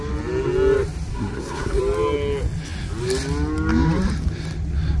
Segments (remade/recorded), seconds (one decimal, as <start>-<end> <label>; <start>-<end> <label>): 0.0-1.1 recorded; 1.1-1.8 remade; 1.8-5.0 recorded

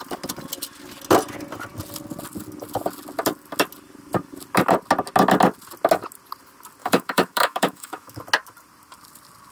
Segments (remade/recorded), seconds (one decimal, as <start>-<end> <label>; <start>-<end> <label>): 0.0-6.8 recorded; 6.8-8.2 remade; 8.2-9.5 recorded

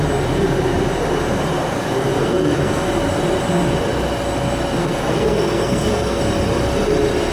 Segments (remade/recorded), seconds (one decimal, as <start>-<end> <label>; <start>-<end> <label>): 0.0-2.2 recorded; 2.2-2.9 remade; 2.9-4.8 recorded; 4.8-6.2 remade; 6.2-7.3 recorded

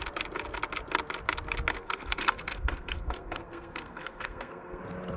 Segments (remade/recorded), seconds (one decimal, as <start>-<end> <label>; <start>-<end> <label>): 0.0-1.7 recorded; 1.7-4.8 remade; 4.8-5.2 recorded

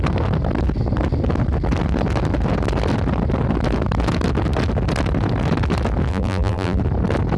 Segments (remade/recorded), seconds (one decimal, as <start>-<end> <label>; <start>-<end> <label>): 0.0-6.1 recorded; 6.1-6.8 remade; 6.8-7.4 recorded

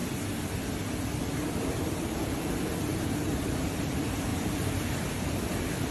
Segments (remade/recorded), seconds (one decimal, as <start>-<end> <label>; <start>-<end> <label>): 0.0-1.2 recorded; 1.2-2.9 remade; 2.9-3.4 recorded; 3.4-5.9 remade